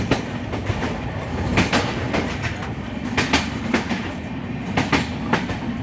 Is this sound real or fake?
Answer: real